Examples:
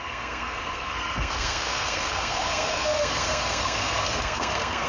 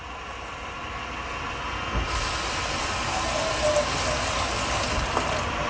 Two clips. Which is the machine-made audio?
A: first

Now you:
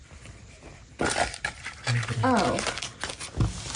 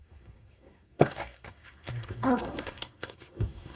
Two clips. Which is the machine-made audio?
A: second